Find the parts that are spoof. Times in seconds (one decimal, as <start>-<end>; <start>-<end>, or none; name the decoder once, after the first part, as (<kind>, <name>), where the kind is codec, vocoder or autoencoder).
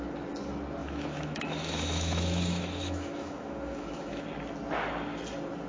0.8-4.2 (autoencoder, DAC-VAE)